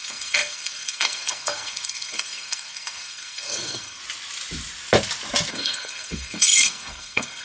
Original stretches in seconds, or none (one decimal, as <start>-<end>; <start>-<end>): 4.0-5.5